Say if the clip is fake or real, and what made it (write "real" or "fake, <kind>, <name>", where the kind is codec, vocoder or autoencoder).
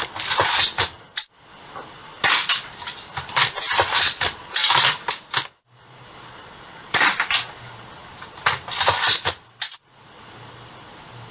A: real